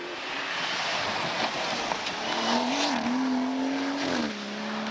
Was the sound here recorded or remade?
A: recorded